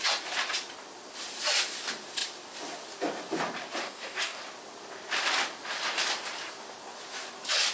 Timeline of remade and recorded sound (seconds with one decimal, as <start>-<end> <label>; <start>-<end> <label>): 0.0-3.8 recorded; 3.8-4.4 remade; 4.4-7.7 recorded